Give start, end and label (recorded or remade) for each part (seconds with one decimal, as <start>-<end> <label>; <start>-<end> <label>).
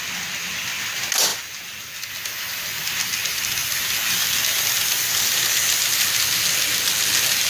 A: 0.0-7.5 recorded